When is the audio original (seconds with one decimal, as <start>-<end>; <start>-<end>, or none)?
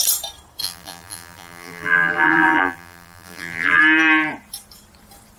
0.0-0.6; 3.8-5.4